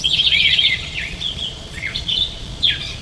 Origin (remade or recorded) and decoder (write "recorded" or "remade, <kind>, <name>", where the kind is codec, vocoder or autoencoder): remade, vocoder, Vocos